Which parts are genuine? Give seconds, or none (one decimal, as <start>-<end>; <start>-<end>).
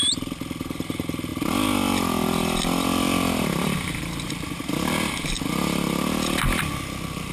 0.0-7.3